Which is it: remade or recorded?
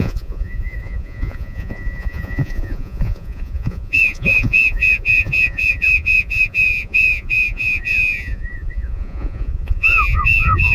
remade